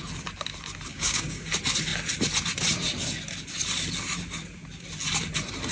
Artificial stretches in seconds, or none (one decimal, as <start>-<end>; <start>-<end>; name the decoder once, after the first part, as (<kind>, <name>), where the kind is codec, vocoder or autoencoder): 0.9-1.5 (codec, DAC)